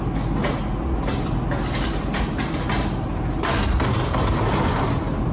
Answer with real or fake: real